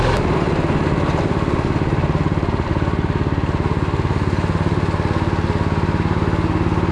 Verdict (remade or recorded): recorded